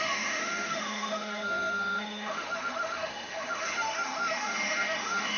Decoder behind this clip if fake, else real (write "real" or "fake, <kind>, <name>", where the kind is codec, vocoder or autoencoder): fake, autoencoder, DAC-VAE